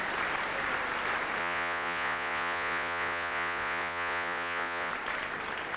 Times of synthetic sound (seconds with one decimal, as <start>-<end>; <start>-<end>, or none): 1.4-4.9